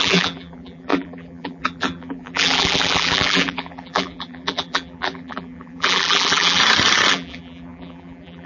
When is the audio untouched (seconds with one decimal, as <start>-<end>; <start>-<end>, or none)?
6.6-7.1